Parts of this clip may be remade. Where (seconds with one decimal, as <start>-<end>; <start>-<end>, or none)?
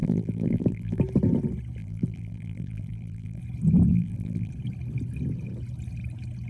0.0-1.0; 1.8-3.4; 3.9-4.5